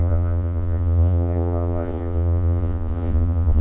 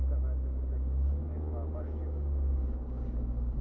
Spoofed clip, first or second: first